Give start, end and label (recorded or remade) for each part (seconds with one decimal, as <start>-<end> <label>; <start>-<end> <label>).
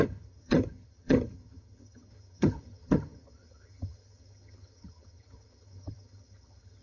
0.0-6.8 remade